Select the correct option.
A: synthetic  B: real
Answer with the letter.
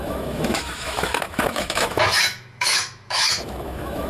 A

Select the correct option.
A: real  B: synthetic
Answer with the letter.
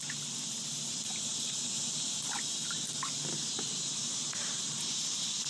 A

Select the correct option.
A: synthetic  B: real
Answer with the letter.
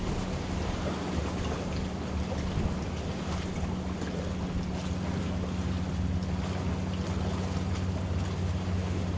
B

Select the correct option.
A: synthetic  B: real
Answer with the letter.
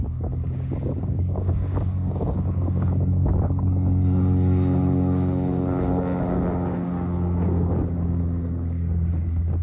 A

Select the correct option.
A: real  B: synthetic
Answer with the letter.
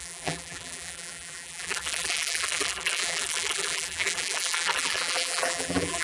B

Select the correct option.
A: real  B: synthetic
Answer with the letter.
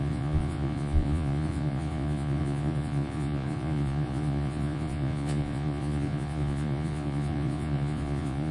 B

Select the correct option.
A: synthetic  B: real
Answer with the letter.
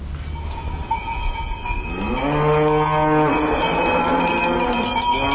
B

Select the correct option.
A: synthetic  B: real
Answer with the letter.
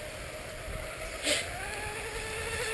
B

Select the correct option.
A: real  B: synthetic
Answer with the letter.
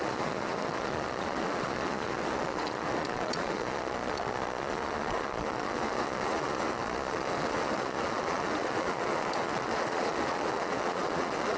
B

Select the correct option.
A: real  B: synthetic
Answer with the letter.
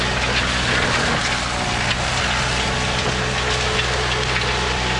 A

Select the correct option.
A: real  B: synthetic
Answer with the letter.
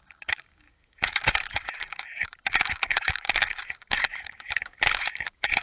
B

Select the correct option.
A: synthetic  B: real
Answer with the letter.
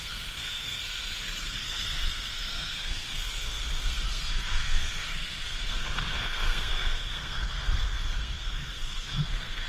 A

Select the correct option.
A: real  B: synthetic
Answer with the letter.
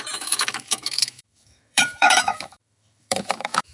B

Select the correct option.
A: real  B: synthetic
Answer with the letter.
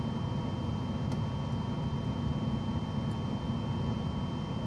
A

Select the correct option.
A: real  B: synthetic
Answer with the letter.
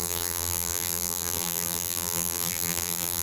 B